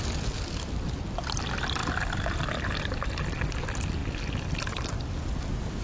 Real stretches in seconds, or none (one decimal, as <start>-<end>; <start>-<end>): 0.0-5.8